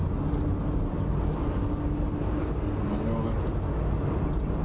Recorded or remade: recorded